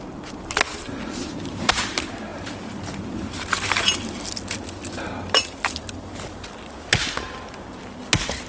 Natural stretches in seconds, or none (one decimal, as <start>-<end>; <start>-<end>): 0.0-8.5